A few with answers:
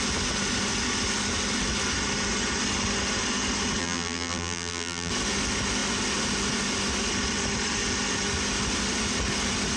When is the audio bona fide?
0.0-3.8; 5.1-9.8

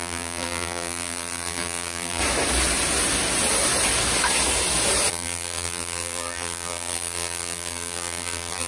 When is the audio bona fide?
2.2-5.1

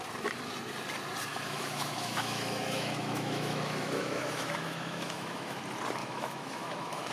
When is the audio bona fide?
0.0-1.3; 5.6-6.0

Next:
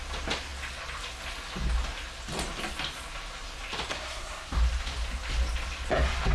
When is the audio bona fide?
0.0-3.9; 4.5-6.3

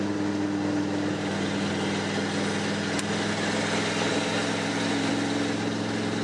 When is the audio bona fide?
0.0-1.1; 1.7-4.1; 5.1-6.2

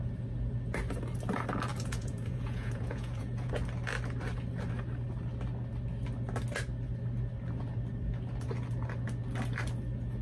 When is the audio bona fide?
0.0-1.7; 3.5-10.2

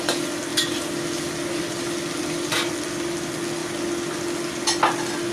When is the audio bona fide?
0.0-5.3